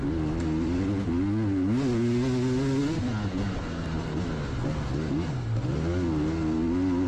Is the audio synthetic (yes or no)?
no